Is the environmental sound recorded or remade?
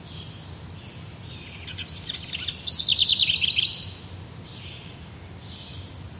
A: recorded